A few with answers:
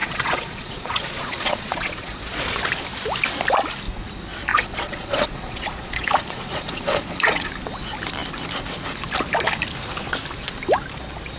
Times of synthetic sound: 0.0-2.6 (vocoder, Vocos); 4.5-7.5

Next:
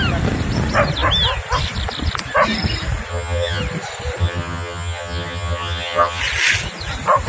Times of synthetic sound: 3.1-3.6 (vocoder, HiFi-GAN); 4.2-6.2

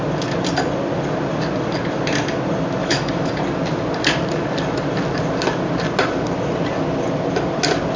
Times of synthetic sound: 2.8-3.3 (autoencoder, DAC-VAE)

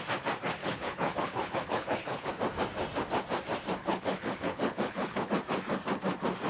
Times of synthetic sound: 0.6-2.3 (codec, HILCodec); 3.8-5.3

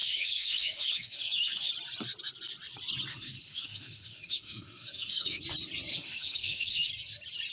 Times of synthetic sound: 0.0-1.7 (autoencoder, DAC-VAE); 3.1-5.4; 5.9-6.9

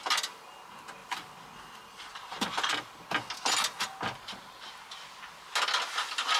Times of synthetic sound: 1.0-3.1 (vocoder, BigVGAN v2)